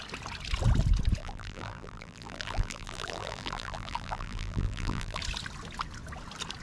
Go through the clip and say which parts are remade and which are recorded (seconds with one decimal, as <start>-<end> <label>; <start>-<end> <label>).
0.0-1.2 recorded; 1.2-5.2 remade; 5.2-6.6 recorded